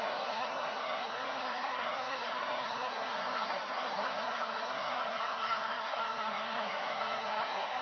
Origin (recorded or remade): remade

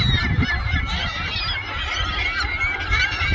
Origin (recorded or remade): recorded